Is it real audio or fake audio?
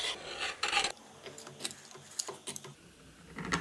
real